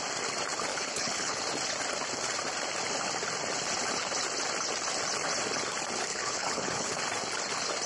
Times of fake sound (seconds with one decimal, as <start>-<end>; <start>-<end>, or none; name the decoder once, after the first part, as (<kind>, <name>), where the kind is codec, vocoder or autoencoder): 0.7-1.4 (codec, HILCodec); 6.1-7.0